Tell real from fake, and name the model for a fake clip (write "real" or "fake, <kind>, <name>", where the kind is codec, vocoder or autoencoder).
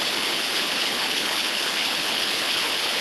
fake, codec, HILCodec